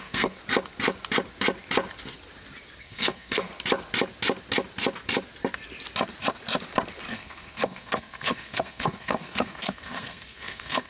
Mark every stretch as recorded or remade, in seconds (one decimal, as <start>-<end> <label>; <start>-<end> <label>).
0.0-0.4 remade; 0.4-2.8 recorded; 2.8-3.5 remade; 3.5-7.1 recorded; 7.1-10.9 remade